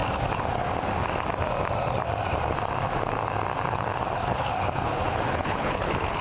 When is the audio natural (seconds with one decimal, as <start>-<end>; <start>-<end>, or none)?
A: 0.0-3.7